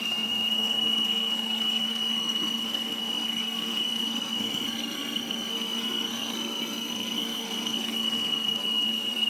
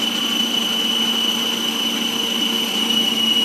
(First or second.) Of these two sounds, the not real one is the first